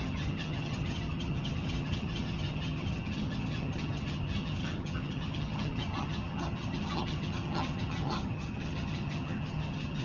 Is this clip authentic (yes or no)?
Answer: no